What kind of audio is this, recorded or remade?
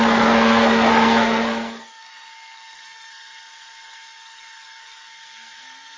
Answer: remade